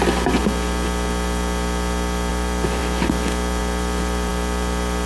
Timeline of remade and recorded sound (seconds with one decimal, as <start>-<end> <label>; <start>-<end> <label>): 0.0-0.4 remade; 0.4-2.3 recorded; 2.3-2.8 remade; 2.8-3.6 recorded; 3.6-5.1 remade